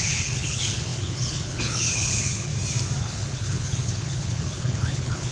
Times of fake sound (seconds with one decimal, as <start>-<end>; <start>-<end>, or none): 0.0-2.5; 3.0-5.3